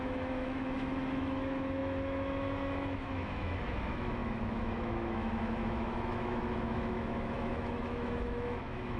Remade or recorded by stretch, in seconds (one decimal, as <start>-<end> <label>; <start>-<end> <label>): 0.0-9.0 remade